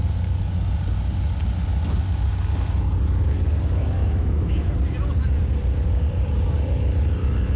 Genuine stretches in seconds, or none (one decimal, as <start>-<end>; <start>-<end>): 0.0-4.0; 4.7-7.6